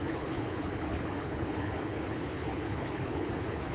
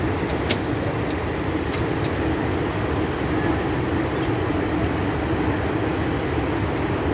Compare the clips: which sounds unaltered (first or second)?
second